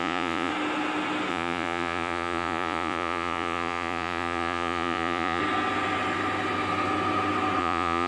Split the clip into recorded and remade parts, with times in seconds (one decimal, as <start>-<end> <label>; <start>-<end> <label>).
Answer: 0.0-0.5 remade; 0.5-1.3 recorded; 1.3-5.4 remade; 5.4-7.6 recorded; 7.6-8.1 remade